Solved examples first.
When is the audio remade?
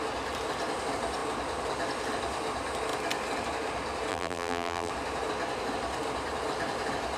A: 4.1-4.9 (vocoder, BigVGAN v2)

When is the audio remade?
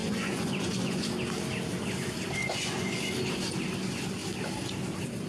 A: 0.0-1.1 (vocoder, Vocos); 2.4-3.1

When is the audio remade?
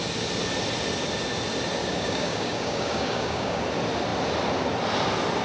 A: 1.8-3.6 (codec, DAC)